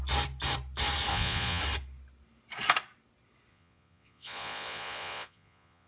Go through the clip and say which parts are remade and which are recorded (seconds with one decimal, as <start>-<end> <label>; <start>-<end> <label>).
0.0-1.1 recorded; 1.1-1.6 remade; 1.6-3.5 recorded; 3.5-5.9 remade